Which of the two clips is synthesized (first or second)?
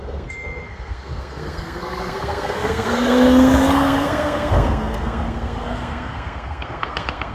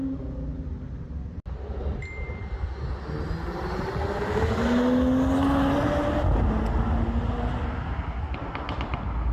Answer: first